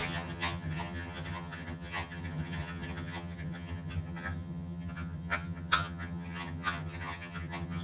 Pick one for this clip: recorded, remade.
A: remade